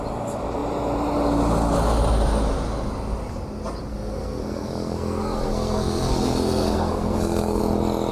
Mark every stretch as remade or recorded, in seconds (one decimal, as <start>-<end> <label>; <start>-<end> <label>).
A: 0.0-3.9 recorded; 3.9-7.6 remade; 7.6-8.1 recorded